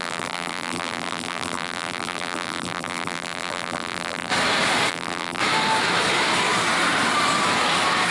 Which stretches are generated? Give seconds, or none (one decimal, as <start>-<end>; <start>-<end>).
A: 0.0-4.3; 4.9-5.4